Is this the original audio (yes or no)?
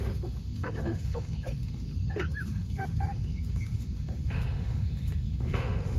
no